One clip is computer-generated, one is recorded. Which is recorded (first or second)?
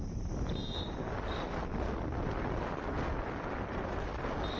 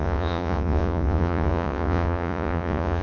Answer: first